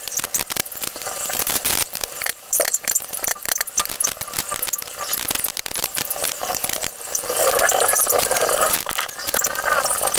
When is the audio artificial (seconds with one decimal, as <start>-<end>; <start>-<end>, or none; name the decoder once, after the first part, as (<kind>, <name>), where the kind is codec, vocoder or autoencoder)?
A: 0.6-3.7 (vocoder, BigVGAN v2); 5.8-8.5